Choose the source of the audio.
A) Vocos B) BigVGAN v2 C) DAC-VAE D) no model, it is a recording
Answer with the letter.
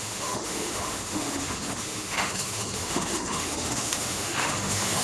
C